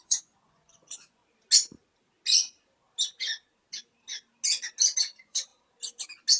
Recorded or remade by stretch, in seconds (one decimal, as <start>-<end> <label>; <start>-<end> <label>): 0.0-1.2 remade; 1.2-5.0 recorded; 5.0-5.5 remade; 5.5-6.4 recorded